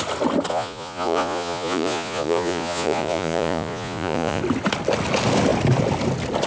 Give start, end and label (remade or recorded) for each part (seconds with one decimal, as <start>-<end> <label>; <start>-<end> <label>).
0.0-0.5 recorded; 0.5-4.4 remade; 4.4-6.5 recorded